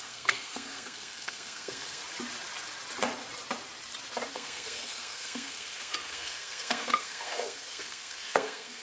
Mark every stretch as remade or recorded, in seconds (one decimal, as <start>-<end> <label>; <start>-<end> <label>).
0.0-2.0 remade; 2.0-4.3 recorded; 4.3-8.8 remade